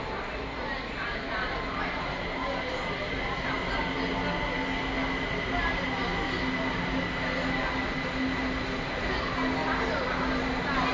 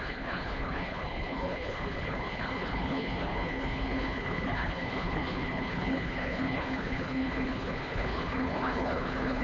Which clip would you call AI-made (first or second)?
second